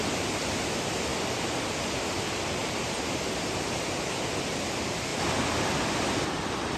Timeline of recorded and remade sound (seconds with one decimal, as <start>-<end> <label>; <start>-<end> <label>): 0.0-6.8 recorded